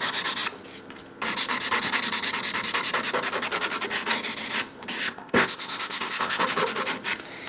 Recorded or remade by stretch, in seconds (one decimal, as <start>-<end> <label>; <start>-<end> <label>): 0.0-5.0 recorded; 5.0-6.4 remade; 6.4-7.5 recorded